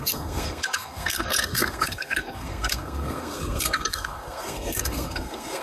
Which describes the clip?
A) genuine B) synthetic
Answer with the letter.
B